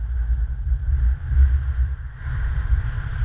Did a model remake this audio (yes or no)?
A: yes